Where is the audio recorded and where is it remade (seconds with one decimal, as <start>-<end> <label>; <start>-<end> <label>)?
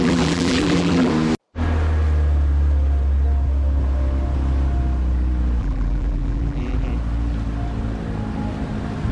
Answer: 0.0-1.1 remade; 1.1-5.6 recorded; 5.6-6.9 remade; 6.9-9.1 recorded